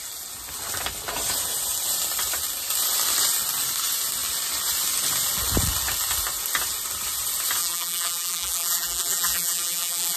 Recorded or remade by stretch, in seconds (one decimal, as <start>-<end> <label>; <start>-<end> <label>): 0.0-7.6 recorded; 7.6-10.2 remade